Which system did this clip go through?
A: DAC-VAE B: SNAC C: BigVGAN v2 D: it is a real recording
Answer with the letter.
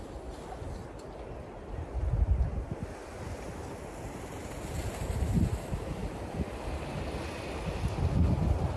D